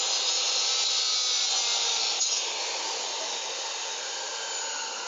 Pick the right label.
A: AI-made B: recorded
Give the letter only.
B